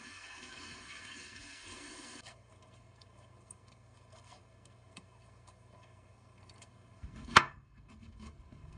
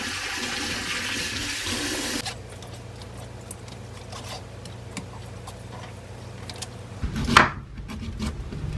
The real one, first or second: second